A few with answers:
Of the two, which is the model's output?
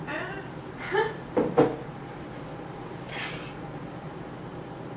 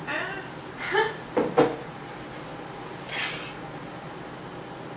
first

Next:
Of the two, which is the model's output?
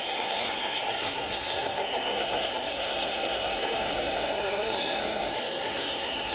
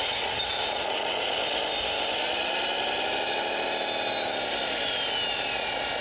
first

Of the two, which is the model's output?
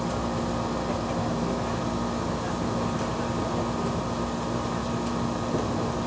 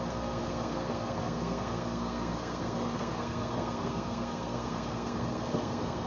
second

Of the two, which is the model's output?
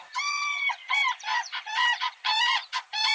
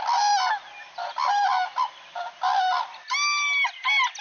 first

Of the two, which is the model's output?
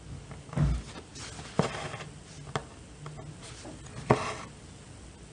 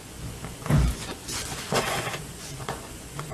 second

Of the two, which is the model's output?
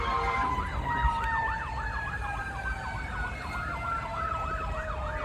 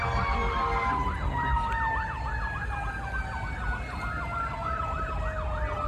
first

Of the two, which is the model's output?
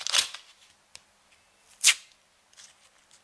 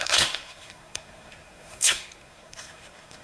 second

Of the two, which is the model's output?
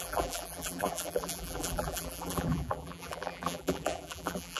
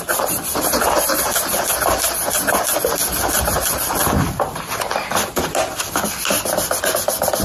first